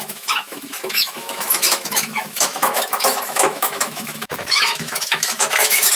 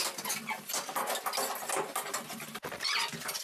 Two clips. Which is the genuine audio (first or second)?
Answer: second